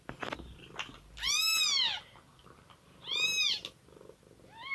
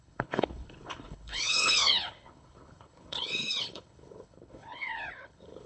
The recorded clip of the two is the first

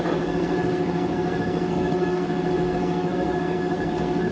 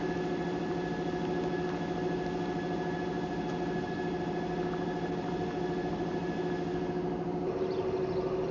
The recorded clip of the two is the second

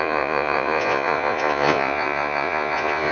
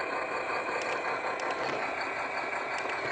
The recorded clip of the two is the second